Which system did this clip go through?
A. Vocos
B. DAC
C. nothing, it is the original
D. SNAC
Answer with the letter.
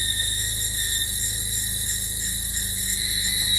C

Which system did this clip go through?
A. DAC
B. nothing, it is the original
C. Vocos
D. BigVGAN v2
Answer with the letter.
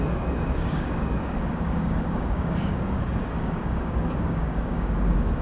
A